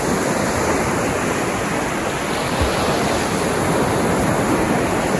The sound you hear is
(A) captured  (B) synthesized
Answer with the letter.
A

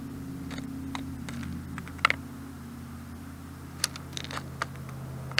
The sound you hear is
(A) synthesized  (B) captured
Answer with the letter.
B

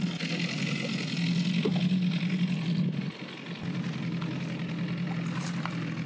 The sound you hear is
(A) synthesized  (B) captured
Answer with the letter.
B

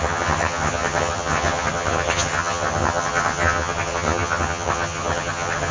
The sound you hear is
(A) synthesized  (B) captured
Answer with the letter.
A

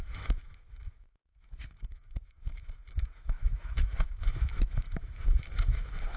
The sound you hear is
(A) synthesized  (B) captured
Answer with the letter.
A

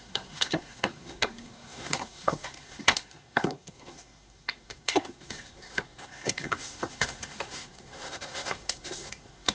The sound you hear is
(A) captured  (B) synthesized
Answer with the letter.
B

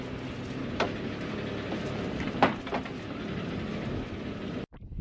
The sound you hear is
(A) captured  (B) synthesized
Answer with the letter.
A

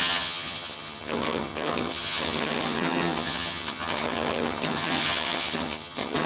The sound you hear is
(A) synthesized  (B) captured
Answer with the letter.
A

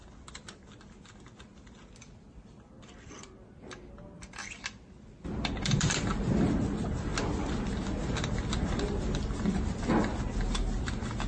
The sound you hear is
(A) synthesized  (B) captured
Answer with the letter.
B